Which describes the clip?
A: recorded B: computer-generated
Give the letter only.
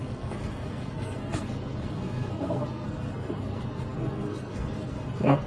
B